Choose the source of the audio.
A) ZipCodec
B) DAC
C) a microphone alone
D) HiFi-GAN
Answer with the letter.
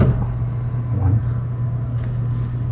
C